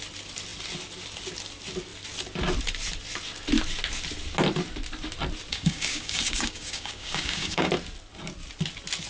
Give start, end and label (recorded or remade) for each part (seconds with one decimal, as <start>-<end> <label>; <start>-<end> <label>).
0.0-5.5 recorded; 5.5-7.7 remade; 7.7-9.1 recorded